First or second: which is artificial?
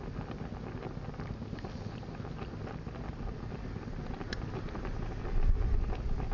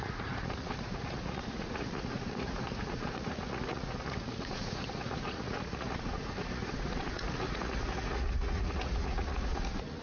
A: second